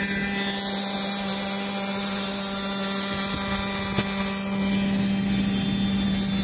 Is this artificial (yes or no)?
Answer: no